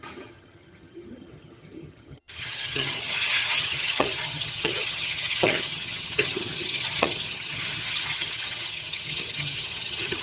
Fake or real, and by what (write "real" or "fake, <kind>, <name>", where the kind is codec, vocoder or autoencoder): fake, vocoder, HiFi-GAN